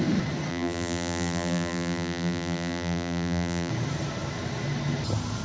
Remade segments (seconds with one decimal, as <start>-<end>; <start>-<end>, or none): 0.5-3.7